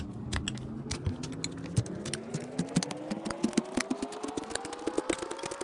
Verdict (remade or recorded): recorded